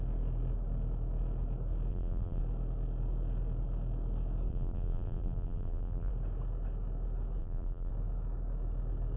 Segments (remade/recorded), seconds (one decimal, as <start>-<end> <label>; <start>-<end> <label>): 0.0-1.9 recorded; 1.9-2.4 remade; 2.4-4.5 recorded; 4.5-6.1 remade; 6.1-7.4 recorded; 7.4-7.9 remade; 7.9-9.2 recorded